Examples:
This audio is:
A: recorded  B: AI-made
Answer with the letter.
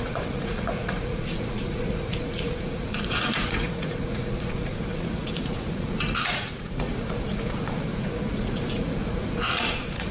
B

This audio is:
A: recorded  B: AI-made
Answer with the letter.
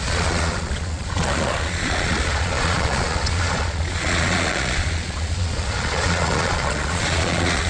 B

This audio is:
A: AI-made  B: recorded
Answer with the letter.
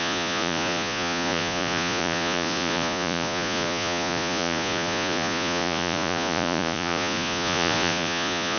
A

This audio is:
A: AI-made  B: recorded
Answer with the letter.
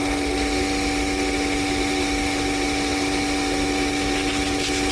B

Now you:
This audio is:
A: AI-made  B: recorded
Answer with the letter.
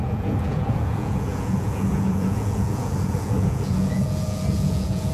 A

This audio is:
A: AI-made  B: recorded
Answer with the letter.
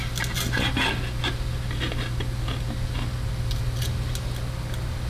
B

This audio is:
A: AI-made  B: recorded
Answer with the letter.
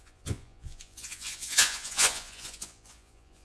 A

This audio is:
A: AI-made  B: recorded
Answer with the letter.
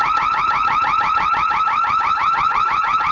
A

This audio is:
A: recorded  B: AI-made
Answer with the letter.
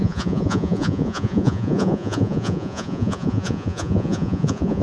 B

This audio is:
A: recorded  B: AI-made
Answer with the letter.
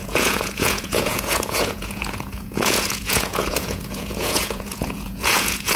B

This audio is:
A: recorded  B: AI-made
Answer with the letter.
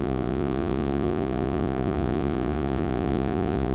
B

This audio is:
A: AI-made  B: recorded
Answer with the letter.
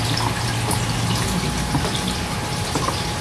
B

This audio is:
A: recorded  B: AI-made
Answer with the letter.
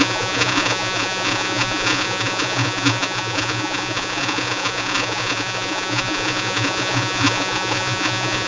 B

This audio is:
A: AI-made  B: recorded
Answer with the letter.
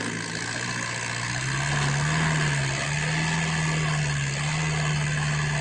B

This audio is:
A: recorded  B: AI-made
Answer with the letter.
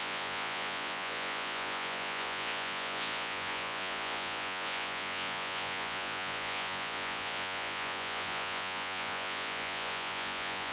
B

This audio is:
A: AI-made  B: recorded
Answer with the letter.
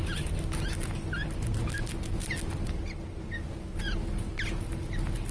B